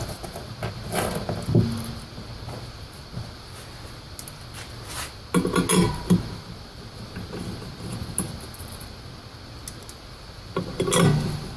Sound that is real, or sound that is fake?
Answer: real